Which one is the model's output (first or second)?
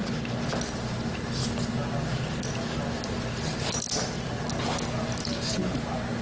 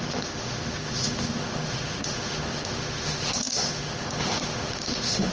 second